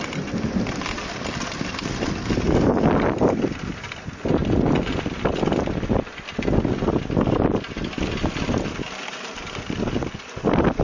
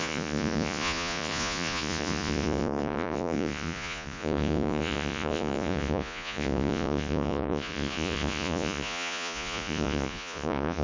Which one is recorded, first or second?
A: first